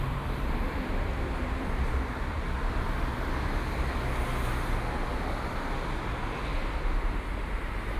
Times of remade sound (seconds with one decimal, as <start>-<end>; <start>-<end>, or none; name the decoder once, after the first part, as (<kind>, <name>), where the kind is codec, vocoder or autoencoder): 0.0-4.1 (vocoder, BigVGAN v2)